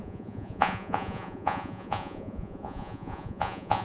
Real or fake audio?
fake